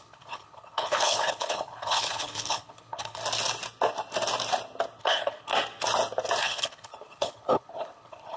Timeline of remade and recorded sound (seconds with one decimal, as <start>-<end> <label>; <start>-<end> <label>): 0.0-3.2 remade; 3.2-5.0 recorded; 5.0-5.5 remade; 5.5-6.4 recorded; 6.4-8.4 remade